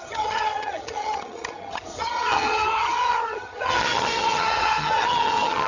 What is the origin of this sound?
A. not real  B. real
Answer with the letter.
A